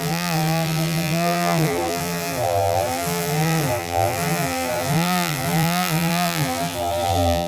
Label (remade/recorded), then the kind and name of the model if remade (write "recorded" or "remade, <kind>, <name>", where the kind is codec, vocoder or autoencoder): remade, vocoder, BigVGAN v2